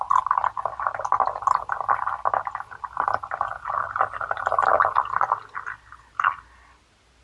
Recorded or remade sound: recorded